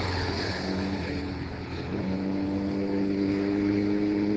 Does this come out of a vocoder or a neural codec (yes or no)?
yes